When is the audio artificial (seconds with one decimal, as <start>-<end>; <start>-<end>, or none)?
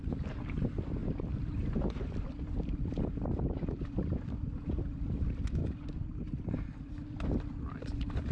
none